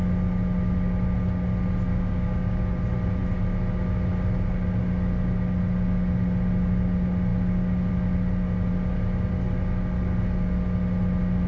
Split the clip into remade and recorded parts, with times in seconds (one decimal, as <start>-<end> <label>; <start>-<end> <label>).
0.0-1.9 recorded; 1.9-2.6 remade; 2.6-11.5 recorded